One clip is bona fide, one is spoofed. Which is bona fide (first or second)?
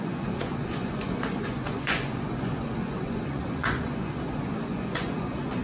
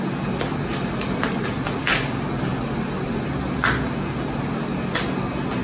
second